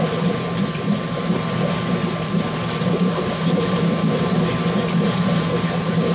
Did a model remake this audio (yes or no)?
yes